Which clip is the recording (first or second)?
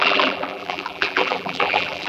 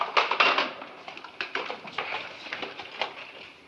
second